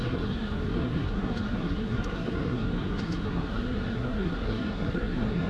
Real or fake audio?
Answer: fake